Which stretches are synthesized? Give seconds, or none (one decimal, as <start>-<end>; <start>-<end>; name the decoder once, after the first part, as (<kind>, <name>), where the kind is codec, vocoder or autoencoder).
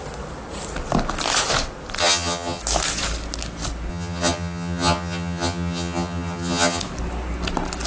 2.0-2.6 (vocoder, HiFi-GAN); 3.9-6.8